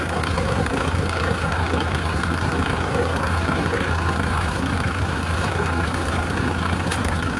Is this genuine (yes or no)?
no